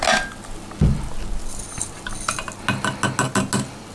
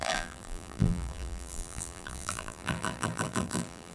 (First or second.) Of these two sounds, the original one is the first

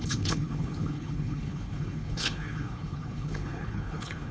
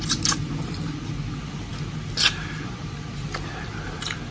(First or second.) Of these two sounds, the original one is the second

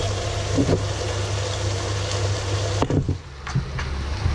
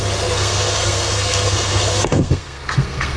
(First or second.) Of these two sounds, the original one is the first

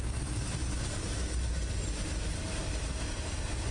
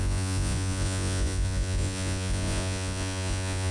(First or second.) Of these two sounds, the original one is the first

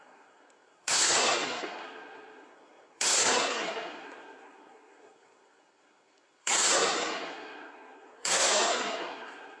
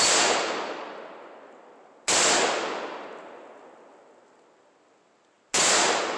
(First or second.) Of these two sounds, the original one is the second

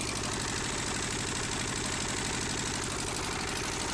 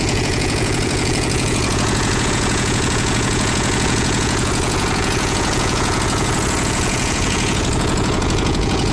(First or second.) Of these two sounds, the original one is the first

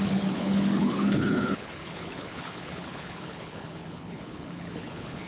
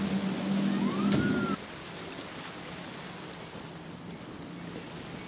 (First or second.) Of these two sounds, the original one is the second